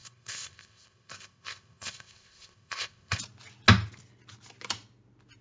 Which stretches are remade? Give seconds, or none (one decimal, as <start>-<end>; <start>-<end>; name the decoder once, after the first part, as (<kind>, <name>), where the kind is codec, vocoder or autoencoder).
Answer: 0.0-3.2 (codec, ZipCodec)